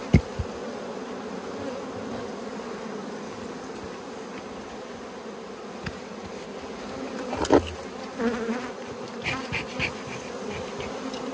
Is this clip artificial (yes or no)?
no